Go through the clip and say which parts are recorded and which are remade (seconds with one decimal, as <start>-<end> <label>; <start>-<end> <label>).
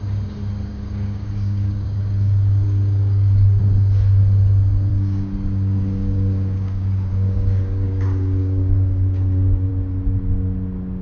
0.0-0.7 recorded; 0.7-3.6 remade; 3.6-4.9 recorded; 4.9-9.7 remade; 9.7-11.0 recorded